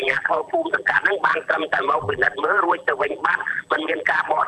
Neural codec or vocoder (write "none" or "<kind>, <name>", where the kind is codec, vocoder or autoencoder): vocoder, BigVGAN v2